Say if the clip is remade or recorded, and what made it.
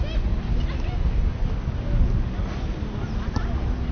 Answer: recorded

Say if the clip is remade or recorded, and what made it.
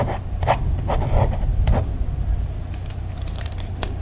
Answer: remade, vocoder, BigVGAN v2